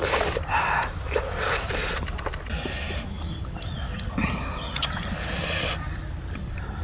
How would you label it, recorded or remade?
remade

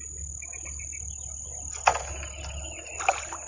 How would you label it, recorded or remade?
recorded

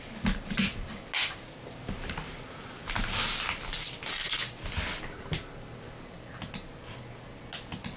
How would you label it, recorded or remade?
recorded